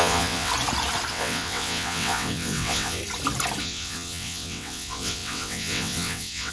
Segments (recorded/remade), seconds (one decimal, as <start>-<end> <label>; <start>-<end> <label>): 0.0-0.5 remade; 0.5-1.1 recorded; 1.1-3.0 remade; 3.0-3.6 recorded; 3.6-6.5 remade